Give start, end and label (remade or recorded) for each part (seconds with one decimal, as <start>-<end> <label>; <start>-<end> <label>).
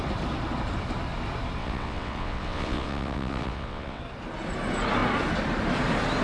0.0-1.6 recorded; 1.6-4.0 remade; 4.0-6.2 recorded